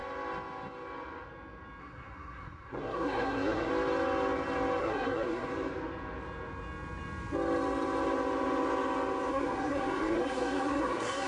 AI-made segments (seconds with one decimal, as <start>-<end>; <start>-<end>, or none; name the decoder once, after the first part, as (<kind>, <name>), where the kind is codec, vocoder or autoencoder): 1.8-3.7 (codec, SNAC); 4.8-5.5; 9.3-11.3

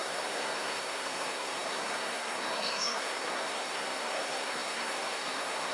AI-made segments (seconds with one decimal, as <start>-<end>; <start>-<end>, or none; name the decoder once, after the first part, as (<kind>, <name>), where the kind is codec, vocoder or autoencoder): 0.0-5.7 (codec, SNAC)

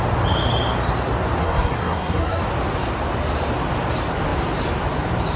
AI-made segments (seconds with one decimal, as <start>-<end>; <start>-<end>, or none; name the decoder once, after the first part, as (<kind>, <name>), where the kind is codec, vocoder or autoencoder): 1.4-2.4 (codec, SNAC)